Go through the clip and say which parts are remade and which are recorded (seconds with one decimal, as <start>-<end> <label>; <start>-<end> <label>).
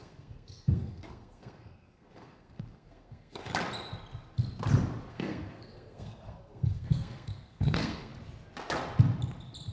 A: 0.0-3.5 remade; 3.5-5.1 recorded; 5.1-8.1 remade; 8.1-9.7 recorded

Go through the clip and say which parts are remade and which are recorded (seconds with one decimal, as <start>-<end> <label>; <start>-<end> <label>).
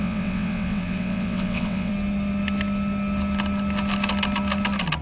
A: 0.0-1.9 remade; 1.9-5.0 recorded